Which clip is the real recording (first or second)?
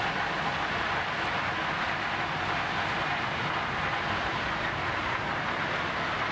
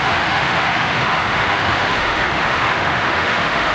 first